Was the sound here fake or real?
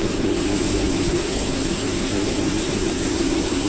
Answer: fake